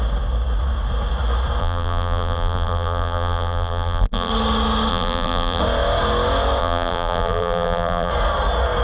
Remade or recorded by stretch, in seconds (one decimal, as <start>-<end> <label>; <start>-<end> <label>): 0.0-1.6 recorded; 1.6-4.3 remade; 4.3-4.9 recorded; 4.9-5.6 remade; 5.6-6.6 recorded; 6.6-8.1 remade; 8.1-8.8 recorded